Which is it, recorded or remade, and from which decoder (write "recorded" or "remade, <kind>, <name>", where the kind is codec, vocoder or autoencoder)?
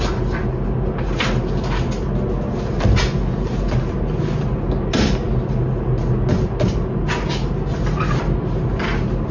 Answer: recorded